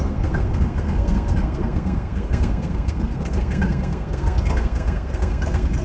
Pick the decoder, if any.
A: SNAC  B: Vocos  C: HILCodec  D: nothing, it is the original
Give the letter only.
A